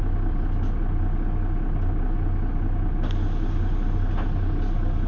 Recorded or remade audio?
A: recorded